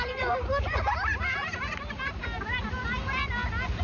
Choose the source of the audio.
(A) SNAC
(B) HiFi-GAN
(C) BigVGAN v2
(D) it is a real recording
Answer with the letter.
D